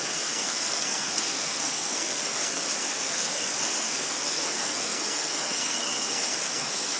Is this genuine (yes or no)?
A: no